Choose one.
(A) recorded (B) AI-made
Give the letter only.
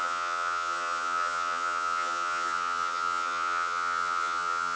B